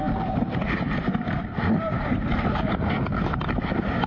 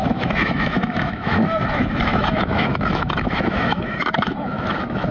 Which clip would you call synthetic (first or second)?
second